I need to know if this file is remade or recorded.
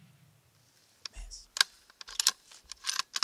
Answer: recorded